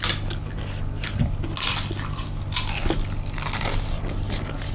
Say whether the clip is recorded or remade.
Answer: recorded